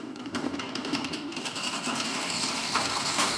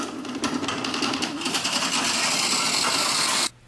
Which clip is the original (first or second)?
second